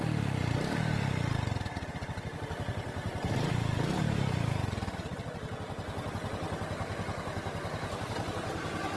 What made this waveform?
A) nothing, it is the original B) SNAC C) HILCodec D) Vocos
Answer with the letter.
A